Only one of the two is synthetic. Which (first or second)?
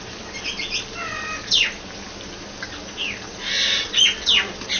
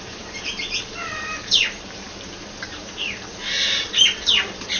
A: second